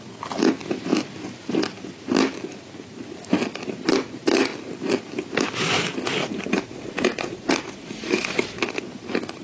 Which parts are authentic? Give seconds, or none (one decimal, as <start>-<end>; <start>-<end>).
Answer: 0.0-6.2; 8.6-9.4